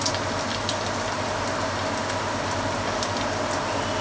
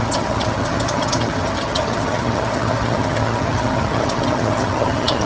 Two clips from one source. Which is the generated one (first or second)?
second